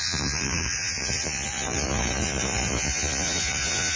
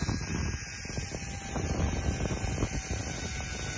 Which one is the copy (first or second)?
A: first